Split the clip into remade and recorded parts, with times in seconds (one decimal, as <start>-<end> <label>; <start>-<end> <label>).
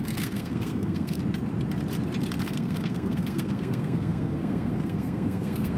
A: 0.0-1.2 remade; 1.2-2.4 recorded; 2.4-5.8 remade